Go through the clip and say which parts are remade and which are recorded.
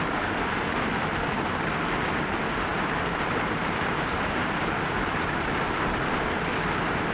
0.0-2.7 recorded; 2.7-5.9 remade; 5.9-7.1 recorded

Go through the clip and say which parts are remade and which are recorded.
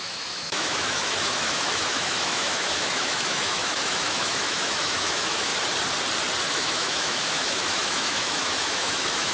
0.0-5.5 remade; 5.5-6.5 recorded; 6.5-9.3 remade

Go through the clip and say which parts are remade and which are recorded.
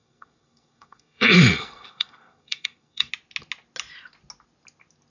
0.0-3.1 remade; 3.1-5.1 recorded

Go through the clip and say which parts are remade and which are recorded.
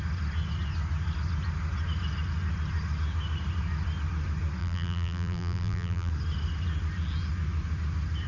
0.0-4.6 recorded; 4.6-6.1 remade; 6.1-8.3 recorded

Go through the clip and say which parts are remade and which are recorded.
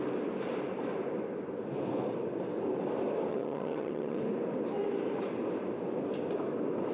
0.0-3.3 recorded; 3.3-4.2 remade; 4.2-6.9 recorded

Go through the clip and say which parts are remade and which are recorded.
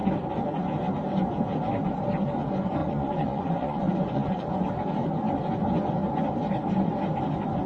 0.0-2.8 recorded; 2.8-4.5 remade; 4.5-7.7 recorded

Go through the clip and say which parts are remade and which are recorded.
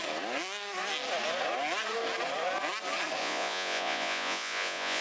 0.0-3.2 recorded; 3.2-5.0 remade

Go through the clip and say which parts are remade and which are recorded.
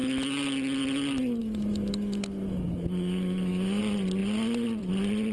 0.0-1.4 recorded; 1.4-3.8 remade; 3.8-5.3 recorded